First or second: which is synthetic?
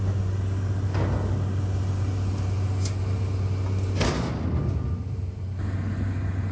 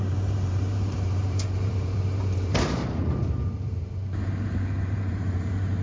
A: second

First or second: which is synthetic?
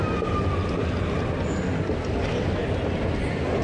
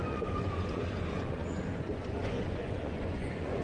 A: second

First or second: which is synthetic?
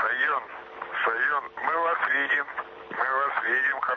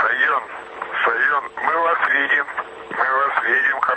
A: second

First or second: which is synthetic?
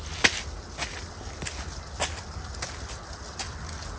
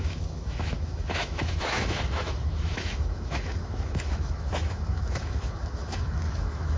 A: second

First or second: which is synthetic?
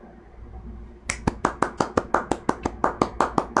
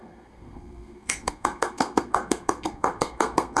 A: second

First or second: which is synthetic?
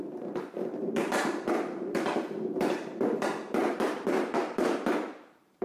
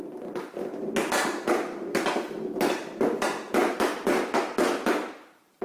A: first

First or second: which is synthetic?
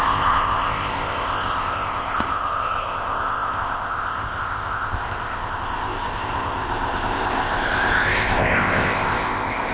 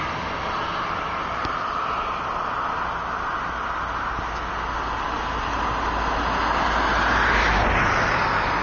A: first